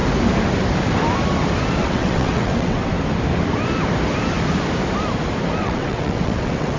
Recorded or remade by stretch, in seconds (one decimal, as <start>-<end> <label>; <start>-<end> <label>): 0.0-1.8 recorded; 1.8-2.9 remade; 2.9-5.6 recorded; 5.6-6.8 remade